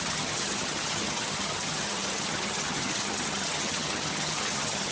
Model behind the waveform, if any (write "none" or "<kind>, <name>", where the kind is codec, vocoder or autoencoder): vocoder, HiFi-GAN